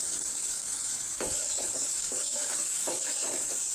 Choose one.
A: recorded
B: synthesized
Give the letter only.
B